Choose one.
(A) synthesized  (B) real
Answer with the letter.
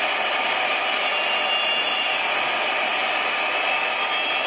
B